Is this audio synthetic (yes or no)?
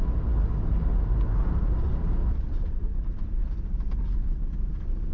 no